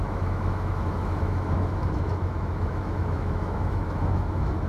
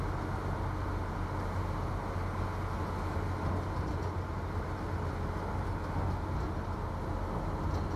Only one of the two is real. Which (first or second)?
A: second